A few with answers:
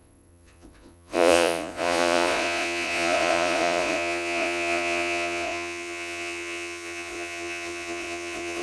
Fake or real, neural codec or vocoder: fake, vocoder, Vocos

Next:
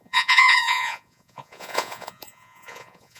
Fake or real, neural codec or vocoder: fake, vocoder, Vocos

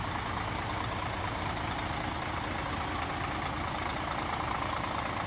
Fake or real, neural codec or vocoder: real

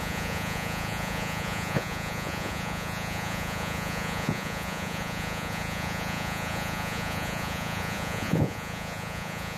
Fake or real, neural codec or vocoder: fake, vocoder, Vocos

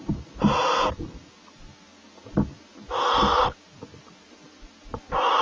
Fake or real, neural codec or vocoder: real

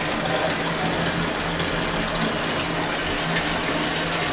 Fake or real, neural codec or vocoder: real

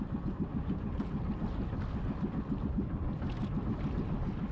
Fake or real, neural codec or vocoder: real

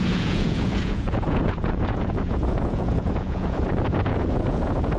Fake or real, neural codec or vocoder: fake, vocoder, Vocos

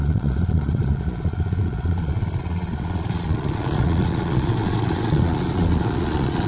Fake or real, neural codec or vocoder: fake, vocoder, Vocos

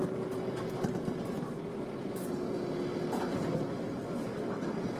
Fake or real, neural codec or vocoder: real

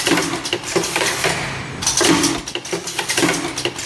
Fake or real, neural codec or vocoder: real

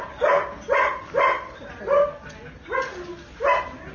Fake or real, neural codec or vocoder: real